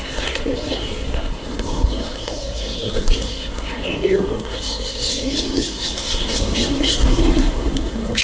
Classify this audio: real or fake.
fake